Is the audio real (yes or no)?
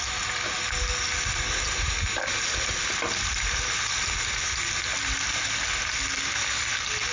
yes